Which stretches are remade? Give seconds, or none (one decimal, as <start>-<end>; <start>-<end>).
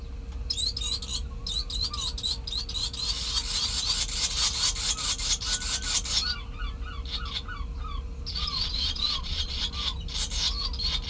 8.3-9.6